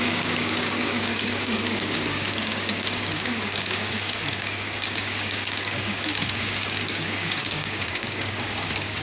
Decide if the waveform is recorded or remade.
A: remade